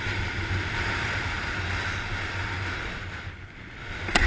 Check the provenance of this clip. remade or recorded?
recorded